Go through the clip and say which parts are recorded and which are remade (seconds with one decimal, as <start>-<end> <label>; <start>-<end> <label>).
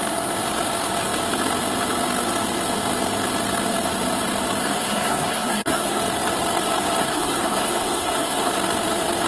0.0-4.6 recorded; 4.6-6.0 remade; 6.0-7.0 recorded; 7.0-8.5 remade; 8.5-9.3 recorded